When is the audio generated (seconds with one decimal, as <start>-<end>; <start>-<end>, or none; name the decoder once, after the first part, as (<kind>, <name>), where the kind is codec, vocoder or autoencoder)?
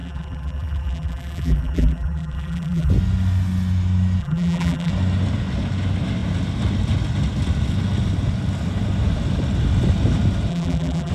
0.0-2.9 (vocoder, BigVGAN v2); 4.2-4.9; 10.5-11.1